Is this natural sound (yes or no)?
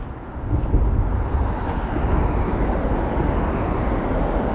yes